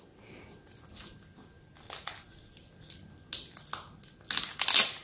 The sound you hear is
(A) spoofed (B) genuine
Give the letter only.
B